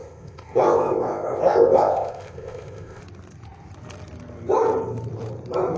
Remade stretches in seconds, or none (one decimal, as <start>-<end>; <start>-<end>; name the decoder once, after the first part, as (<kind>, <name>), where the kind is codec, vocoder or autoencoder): 0.0-3.0 (codec, ZipCodec)